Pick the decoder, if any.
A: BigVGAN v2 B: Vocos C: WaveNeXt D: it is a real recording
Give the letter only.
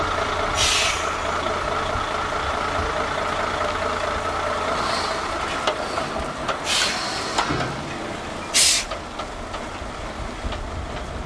D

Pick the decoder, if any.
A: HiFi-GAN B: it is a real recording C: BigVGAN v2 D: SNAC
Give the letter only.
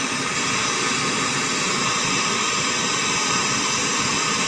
B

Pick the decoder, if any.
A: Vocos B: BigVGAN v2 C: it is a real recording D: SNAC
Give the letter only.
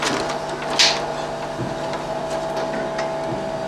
C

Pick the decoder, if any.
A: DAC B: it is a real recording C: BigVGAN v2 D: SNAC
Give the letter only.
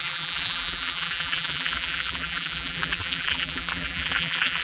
C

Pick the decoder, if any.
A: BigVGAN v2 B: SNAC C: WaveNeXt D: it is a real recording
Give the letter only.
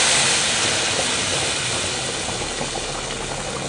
D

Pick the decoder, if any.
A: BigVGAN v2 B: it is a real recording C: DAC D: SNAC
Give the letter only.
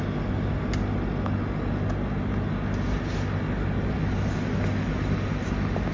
B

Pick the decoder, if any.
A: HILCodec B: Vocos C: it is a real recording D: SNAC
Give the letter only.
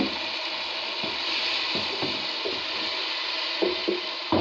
C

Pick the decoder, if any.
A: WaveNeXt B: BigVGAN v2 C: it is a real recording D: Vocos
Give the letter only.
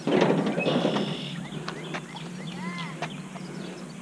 C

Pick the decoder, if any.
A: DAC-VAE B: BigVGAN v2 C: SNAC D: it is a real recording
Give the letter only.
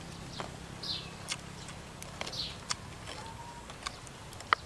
D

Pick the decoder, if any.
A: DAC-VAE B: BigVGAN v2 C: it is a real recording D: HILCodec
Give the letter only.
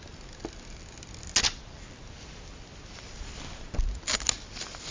C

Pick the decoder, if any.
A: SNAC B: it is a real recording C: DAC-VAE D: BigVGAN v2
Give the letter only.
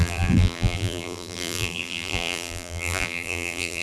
D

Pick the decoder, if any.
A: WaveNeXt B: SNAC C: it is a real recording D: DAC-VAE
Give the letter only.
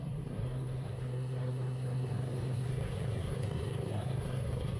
B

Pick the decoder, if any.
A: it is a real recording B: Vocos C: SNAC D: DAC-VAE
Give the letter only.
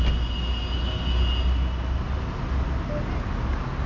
A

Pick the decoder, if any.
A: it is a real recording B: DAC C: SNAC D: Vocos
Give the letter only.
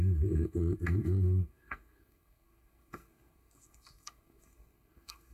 C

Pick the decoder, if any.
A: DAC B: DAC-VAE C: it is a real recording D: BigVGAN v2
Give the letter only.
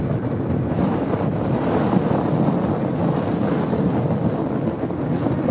C